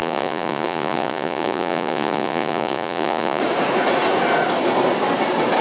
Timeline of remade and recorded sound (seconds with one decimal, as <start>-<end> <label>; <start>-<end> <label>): 0.0-3.4 remade; 3.4-5.6 recorded